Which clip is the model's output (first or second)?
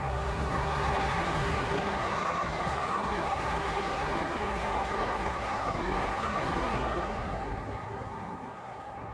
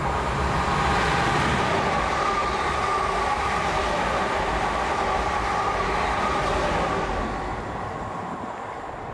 first